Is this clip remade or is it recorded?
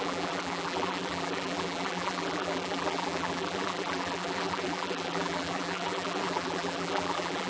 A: remade